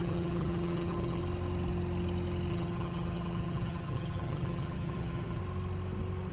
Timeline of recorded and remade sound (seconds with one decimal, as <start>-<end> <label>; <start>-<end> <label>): 0.0-1.2 remade; 1.2-2.5 recorded; 2.5-5.4 remade; 5.4-6.3 recorded